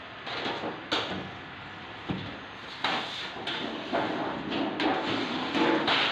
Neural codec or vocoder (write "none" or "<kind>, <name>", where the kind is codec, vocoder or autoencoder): none